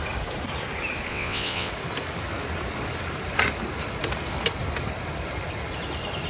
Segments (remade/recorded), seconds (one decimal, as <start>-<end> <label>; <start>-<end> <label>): 0.0-1.1 recorded; 1.1-1.7 remade; 1.7-6.3 recorded